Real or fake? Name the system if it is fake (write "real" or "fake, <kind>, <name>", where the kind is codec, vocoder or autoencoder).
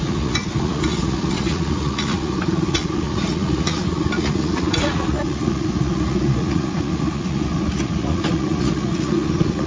fake, vocoder, Vocos